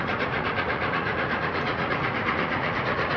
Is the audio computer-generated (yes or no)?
yes